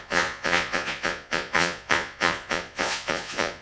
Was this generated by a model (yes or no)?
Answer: yes